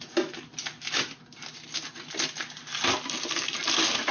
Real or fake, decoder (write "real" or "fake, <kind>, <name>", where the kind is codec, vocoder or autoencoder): real